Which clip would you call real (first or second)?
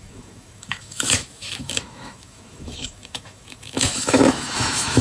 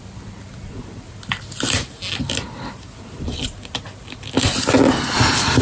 second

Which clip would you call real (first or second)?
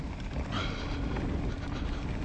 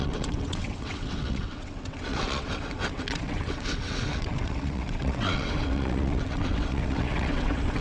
first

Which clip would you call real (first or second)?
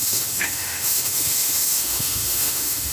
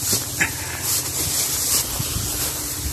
second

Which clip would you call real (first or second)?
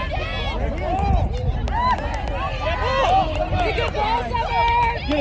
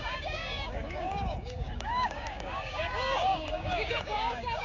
first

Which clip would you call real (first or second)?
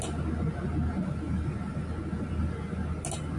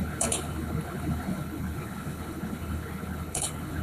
first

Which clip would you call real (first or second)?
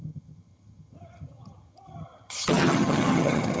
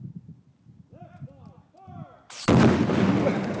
second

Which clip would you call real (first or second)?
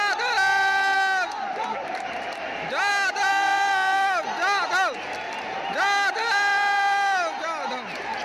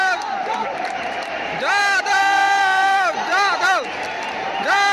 first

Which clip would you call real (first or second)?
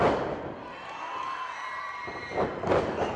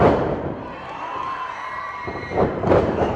first